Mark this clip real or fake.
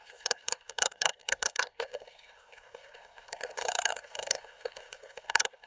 fake